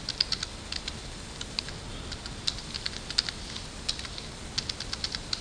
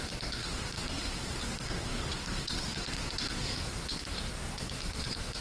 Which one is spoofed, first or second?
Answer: second